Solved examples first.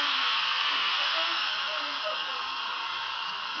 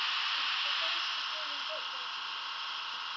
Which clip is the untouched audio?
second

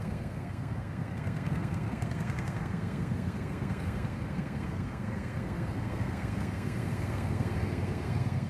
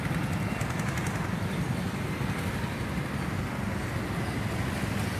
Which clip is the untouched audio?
second